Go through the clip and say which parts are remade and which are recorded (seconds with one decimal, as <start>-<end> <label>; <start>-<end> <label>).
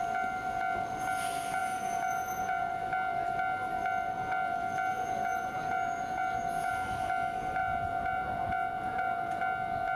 0.0-1.6 recorded; 1.6-2.6 remade; 2.6-4.9 recorded; 4.9-6.7 remade; 6.7-7.6 recorded; 7.6-9.4 remade; 9.4-10.0 recorded